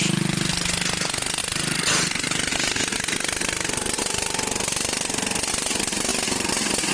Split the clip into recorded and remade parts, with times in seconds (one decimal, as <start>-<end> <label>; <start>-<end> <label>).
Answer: 0.0-6.9 recorded